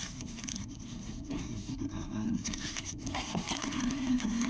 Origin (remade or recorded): remade